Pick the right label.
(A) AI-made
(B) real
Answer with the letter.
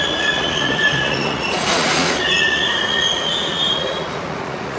A